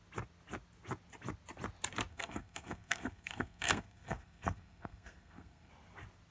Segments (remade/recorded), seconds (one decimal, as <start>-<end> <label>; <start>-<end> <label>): 0.0-2.1 recorded; 2.1-5.7 remade; 5.7-6.3 recorded